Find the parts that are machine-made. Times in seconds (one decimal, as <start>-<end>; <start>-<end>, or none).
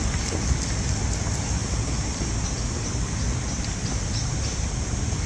none